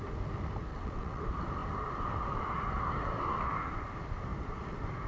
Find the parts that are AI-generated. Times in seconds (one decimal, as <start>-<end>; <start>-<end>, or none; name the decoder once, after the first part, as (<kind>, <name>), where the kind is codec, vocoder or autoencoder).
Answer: 0.7-1.2 (vocoder, WaveNeXt)